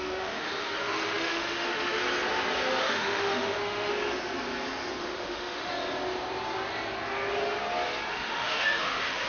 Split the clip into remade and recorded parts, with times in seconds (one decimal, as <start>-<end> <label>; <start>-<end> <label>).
0.0-2.0 remade; 2.0-2.8 recorded; 2.8-3.9 remade; 3.9-5.0 recorded; 5.0-5.7 remade; 5.7-8.1 recorded; 8.1-9.3 remade